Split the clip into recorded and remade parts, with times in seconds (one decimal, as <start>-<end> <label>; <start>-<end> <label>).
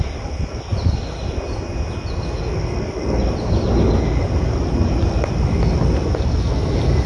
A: 0.0-7.1 recorded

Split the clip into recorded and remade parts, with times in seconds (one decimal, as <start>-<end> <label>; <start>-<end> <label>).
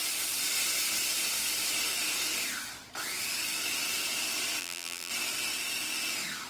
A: 0.0-4.6 recorded; 4.6-5.1 remade; 5.1-6.5 recorded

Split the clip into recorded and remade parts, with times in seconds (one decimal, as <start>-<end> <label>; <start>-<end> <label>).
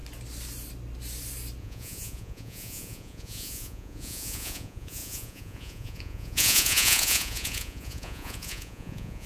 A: 0.0-1.6 recorded; 1.6-9.3 remade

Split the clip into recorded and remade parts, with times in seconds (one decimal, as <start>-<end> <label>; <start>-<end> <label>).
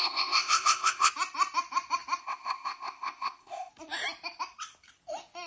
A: 0.0-1.1 remade; 1.1-2.2 recorded; 2.2-3.7 remade; 3.7-5.5 recorded